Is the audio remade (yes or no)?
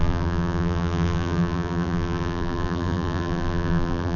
yes